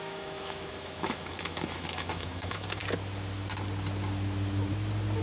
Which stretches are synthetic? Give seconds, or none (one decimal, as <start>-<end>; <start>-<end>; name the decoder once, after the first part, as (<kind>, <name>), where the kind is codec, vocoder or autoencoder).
0.0-2.8 (autoencoder, DAC-VAE)